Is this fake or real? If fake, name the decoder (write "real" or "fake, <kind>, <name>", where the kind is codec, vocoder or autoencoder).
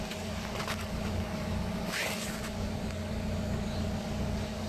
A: fake, codec, DAC